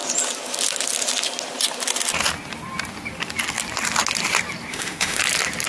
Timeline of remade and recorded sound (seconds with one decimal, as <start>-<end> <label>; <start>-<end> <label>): 0.0-4.7 recorded; 4.7-5.2 remade; 5.2-5.7 recorded